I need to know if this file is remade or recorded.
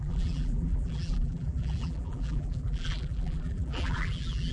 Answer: remade